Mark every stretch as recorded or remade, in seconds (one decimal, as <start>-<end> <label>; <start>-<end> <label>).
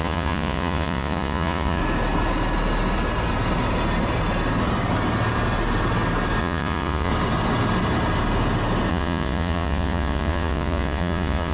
0.0-1.8 remade; 1.8-6.4 recorded; 6.4-7.1 remade; 7.1-8.9 recorded; 8.9-11.5 remade